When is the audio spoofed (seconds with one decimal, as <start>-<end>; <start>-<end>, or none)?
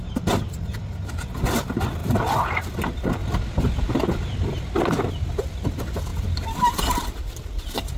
none